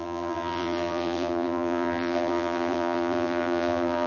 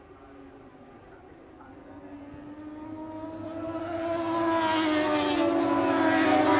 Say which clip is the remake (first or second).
first